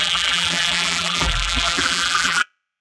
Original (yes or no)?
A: no